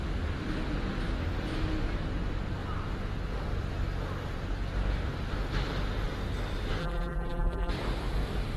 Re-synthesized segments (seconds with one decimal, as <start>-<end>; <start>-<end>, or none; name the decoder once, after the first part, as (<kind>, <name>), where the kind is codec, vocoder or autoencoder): 6.8-7.7 (vocoder, BigVGAN v2)